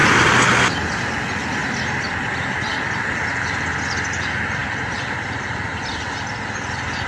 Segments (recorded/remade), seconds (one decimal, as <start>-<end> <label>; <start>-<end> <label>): 0.0-4.6 recorded; 4.6-5.9 remade; 5.9-7.1 recorded